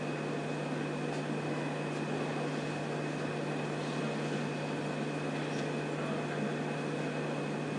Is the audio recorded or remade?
recorded